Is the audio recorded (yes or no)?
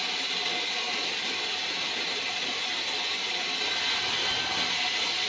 yes